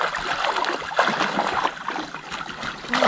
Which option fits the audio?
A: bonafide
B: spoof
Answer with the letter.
A